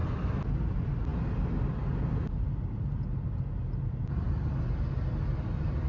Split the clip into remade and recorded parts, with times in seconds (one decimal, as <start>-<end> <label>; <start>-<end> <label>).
0.0-5.9 recorded